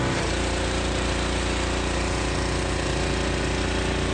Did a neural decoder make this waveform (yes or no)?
no